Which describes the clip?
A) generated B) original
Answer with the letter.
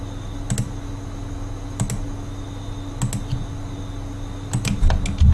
B